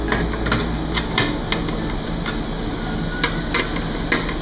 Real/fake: real